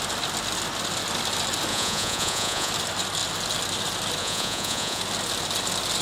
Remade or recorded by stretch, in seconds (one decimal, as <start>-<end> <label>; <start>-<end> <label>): 0.0-1.7 recorded; 1.7-2.7 remade; 2.7-4.2 recorded; 4.2-5.0 remade; 5.0-6.0 recorded